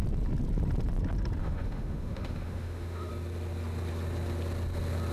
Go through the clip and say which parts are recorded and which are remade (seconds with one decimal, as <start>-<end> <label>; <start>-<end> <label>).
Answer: 0.0-1.4 recorded; 1.4-3.1 remade; 3.1-5.1 recorded